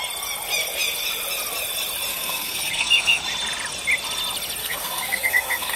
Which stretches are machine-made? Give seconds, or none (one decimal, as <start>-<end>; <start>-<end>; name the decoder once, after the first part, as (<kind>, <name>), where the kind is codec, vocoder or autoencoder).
2.1-3.2 (codec, SNAC); 4.6-5.8